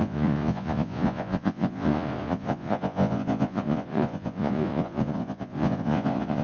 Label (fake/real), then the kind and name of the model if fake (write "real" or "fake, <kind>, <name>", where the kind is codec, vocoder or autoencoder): fake, vocoder, Vocos